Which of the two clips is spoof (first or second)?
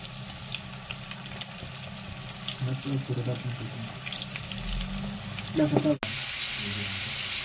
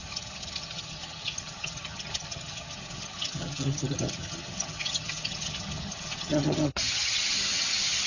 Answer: second